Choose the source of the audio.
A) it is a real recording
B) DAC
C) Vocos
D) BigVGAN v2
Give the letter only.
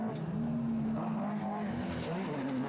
A